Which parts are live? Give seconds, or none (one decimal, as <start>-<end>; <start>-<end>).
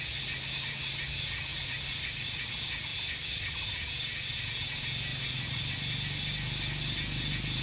0.0-1.5; 2.5-5.1; 5.6-7.6